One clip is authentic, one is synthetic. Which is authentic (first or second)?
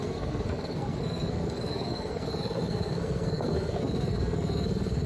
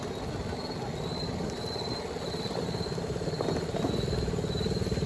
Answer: second